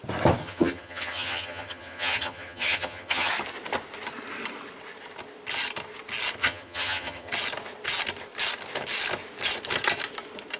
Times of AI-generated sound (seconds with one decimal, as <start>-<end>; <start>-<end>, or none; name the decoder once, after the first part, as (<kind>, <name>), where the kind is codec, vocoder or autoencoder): 0.4-3.3 (vocoder, HiFi-GAN); 6.4-7.3